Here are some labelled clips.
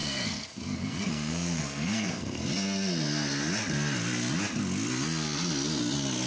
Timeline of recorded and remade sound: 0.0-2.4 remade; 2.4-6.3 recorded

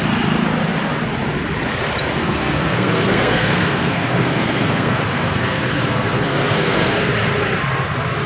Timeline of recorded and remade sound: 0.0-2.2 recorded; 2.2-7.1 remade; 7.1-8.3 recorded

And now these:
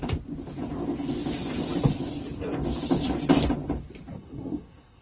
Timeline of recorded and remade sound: 0.0-4.1 recorded; 4.1-5.0 remade